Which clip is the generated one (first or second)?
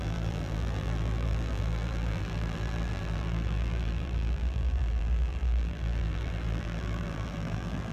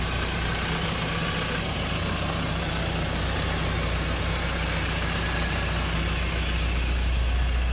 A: first